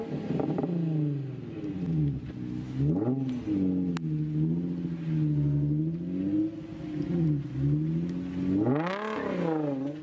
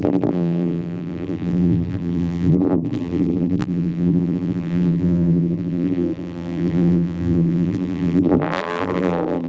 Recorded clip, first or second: first